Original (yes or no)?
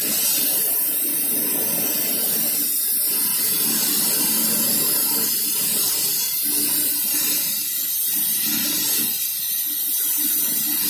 yes